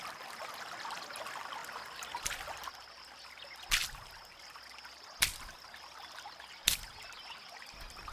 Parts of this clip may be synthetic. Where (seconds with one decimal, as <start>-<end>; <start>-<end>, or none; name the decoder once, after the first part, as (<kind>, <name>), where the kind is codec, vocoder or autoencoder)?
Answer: none